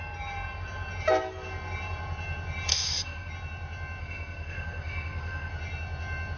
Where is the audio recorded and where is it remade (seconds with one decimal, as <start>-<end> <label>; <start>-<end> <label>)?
0.0-2.7 recorded; 2.7-3.3 remade; 3.3-4.0 recorded; 4.0-5.5 remade; 5.5-6.4 recorded